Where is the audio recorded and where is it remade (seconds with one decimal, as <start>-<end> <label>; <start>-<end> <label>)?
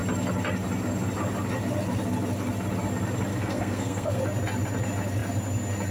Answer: 0.0-3.3 recorded; 3.3-4.2 remade; 4.2-5.9 recorded